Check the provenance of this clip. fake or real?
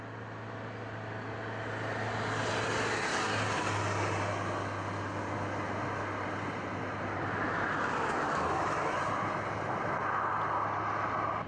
real